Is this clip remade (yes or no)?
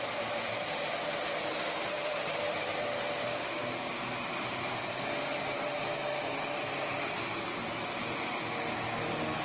no